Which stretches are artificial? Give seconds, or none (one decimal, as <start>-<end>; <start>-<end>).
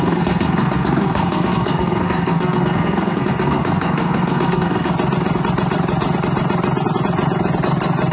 0.0-4.9